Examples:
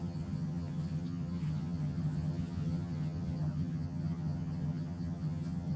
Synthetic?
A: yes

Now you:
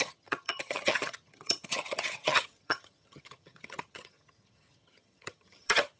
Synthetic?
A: yes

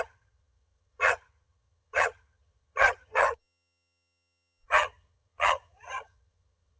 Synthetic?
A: yes